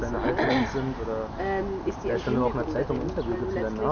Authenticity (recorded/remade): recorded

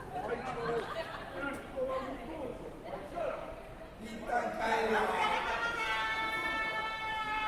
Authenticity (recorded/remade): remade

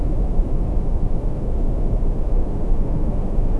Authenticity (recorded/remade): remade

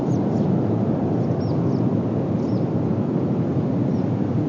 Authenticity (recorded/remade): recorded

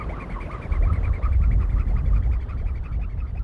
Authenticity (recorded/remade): remade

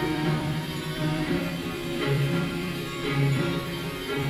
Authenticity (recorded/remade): remade